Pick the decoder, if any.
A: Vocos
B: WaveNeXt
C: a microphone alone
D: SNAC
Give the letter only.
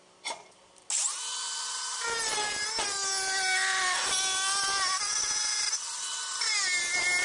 C